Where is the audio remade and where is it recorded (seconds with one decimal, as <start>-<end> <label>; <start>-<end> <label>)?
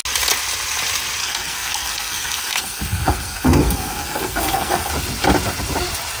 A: 0.0-1.2 recorded; 1.2-4.9 remade; 4.9-6.2 recorded